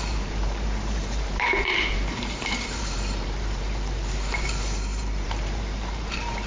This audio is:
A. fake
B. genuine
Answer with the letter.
A